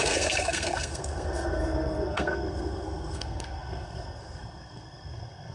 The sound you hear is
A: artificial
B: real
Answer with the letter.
A